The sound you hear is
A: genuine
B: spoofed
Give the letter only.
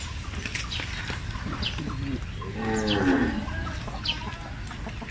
A